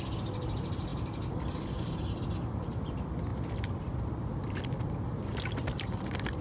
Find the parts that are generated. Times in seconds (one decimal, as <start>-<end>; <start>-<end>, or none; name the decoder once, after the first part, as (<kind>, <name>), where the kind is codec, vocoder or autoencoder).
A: none